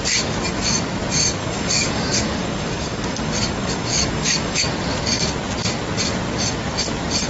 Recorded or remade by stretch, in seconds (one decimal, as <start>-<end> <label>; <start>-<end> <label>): 0.0-1.4 recorded; 1.4-4.7 remade; 4.7-7.3 recorded